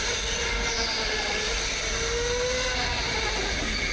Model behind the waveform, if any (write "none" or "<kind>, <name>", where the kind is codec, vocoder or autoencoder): none